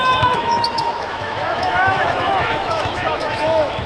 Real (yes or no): no